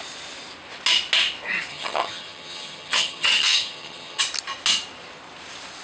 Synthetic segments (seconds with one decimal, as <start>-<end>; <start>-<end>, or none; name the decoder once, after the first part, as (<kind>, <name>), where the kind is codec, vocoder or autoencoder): 1.7-4.2 (vocoder, HiFi-GAN)